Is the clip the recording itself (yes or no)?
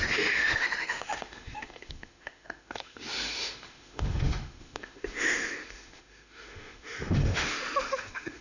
no